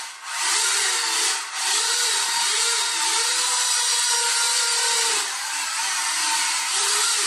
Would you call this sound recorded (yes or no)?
yes